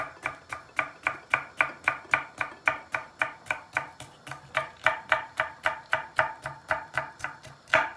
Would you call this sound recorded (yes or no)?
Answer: yes